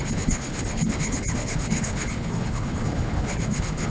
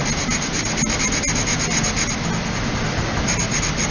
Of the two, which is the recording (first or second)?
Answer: second